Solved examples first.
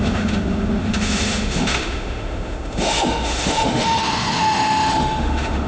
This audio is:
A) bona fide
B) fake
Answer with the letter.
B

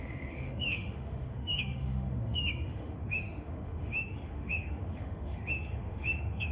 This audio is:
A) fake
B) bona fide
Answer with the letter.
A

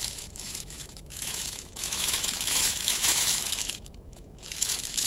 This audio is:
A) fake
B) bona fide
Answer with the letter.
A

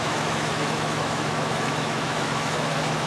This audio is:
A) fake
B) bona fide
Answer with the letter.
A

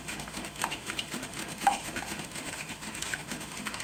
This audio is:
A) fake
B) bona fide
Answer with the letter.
A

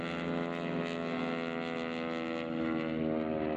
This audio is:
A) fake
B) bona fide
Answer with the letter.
B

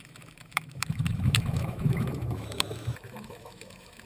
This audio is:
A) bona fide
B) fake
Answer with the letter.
B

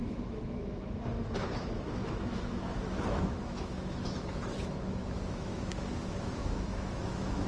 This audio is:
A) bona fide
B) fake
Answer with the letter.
B